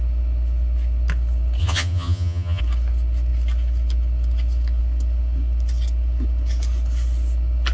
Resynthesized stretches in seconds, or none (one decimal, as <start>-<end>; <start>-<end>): 1.6-2.6